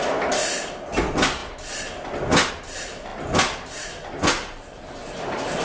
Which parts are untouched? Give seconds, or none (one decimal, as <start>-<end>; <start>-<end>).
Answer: 0.0-5.6